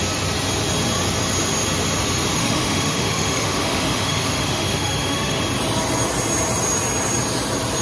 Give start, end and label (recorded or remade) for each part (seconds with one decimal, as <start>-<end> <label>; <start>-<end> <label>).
0.0-2.4 recorded; 2.4-5.4 remade; 5.4-7.8 recorded